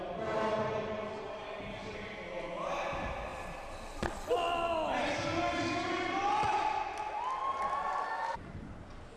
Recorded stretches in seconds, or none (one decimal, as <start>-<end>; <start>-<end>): 0.0-9.2